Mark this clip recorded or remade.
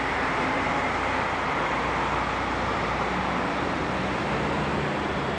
remade